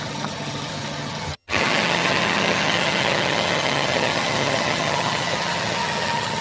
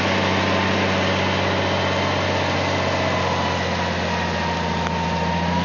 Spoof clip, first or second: first